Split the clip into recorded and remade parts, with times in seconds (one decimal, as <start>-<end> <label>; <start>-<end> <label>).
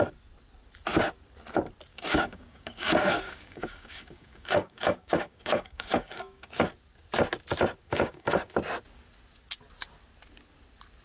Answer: 0.0-1.9 recorded; 1.9-6.6 remade; 6.6-7.9 recorded; 7.9-8.5 remade; 8.5-11.0 recorded